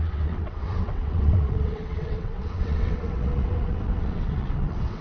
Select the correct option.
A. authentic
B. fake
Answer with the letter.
B